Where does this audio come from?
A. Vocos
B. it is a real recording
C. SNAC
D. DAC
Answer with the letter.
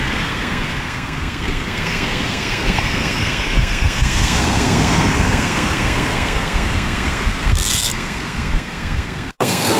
C